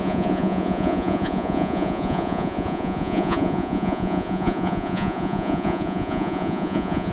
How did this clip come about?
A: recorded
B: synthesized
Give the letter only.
B